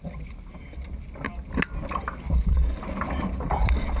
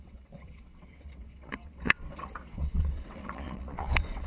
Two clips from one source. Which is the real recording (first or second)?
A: first